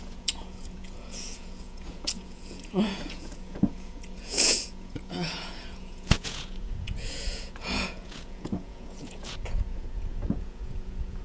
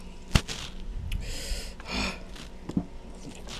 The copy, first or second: first